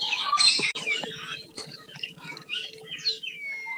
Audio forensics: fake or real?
fake